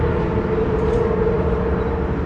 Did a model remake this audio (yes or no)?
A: no